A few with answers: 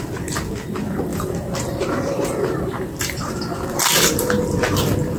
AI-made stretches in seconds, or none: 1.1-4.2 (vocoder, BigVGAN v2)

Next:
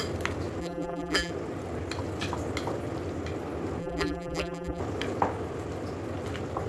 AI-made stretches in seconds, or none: 0.6-1.3 (vocoder, BigVGAN v2); 3.8-4.8

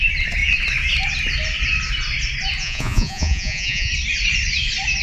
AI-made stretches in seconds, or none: 2.6-3.9 (vocoder, Vocos)

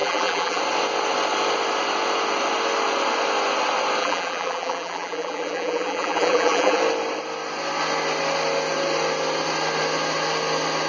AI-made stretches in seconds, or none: 0.0-0.6 (vocoder, BigVGAN v2); 4.0-6.8

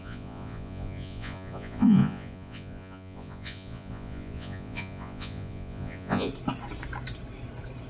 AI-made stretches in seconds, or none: 0.0-6.3 (vocoder, Vocos)

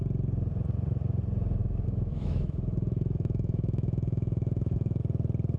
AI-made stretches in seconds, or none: 1.6-5.0 (autoencoder, DAC-VAE)